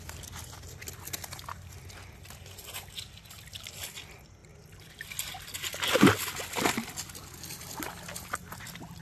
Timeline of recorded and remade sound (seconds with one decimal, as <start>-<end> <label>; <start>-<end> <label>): 0.0-9.0 recorded